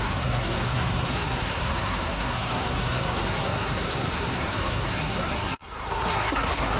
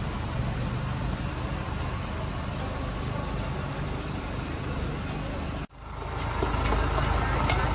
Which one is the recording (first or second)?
second